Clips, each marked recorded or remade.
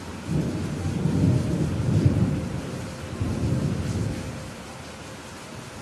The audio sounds recorded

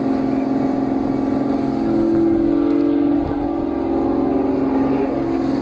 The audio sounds recorded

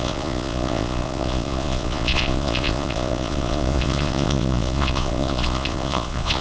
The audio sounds remade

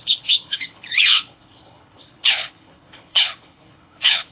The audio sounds remade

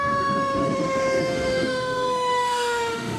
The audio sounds remade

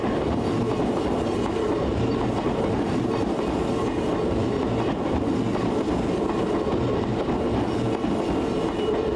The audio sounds recorded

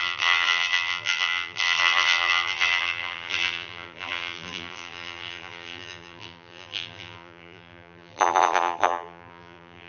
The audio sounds remade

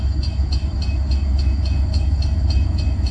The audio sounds remade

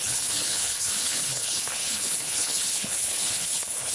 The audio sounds remade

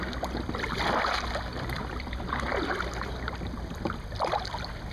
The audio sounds recorded